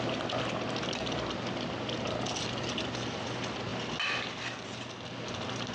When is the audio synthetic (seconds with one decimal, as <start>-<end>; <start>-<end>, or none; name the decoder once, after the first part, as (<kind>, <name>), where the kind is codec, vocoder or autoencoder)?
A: none